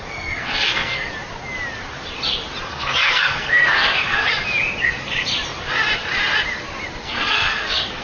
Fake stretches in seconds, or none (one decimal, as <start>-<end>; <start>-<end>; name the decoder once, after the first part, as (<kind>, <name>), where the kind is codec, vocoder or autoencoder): 0.0-1.1 (codec, SNAC); 2.7-4.3; 7.0-8.0